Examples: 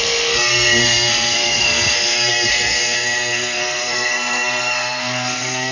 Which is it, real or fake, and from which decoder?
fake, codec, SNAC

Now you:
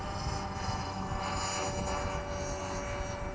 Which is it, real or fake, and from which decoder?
real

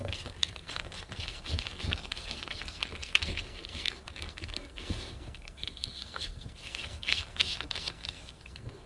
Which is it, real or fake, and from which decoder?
fake, codec, SNAC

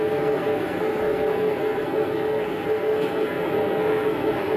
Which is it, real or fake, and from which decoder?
fake, codec, SNAC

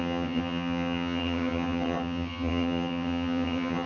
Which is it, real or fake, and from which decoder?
fake, vocoder, HiFi-GAN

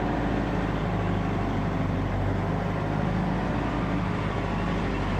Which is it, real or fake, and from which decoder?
real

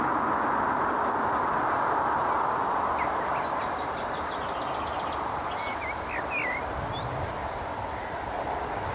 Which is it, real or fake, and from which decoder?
real